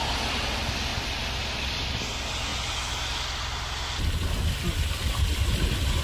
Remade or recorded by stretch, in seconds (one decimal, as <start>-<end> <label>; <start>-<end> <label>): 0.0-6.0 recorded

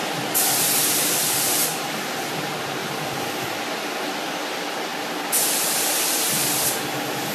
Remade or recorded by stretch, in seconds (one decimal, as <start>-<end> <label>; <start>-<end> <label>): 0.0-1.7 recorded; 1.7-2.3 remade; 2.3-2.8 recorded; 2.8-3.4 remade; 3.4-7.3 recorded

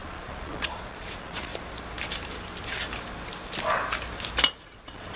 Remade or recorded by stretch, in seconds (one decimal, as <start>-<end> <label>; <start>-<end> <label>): 0.0-1.5 remade; 1.5-4.6 recorded; 4.6-5.2 remade

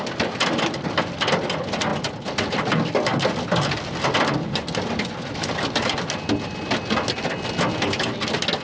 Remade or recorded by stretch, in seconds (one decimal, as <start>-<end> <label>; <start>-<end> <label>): 0.0-8.6 recorded